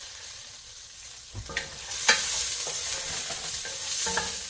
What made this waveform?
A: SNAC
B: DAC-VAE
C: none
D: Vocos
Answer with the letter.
C